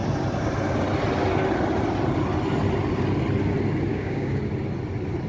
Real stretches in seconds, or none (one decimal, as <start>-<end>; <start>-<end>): 0.0-3.9; 4.4-5.3